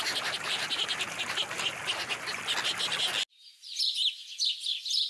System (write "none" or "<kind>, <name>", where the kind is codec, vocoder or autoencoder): none